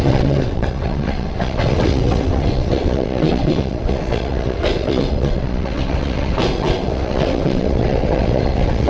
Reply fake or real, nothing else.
fake